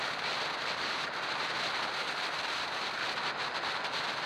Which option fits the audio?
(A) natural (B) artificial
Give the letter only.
A